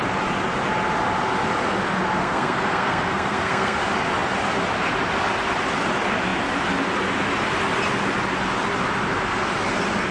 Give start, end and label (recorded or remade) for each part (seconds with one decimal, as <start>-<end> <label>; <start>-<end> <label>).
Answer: 0.0-2.2 recorded; 2.2-3.8 remade; 3.8-10.1 recorded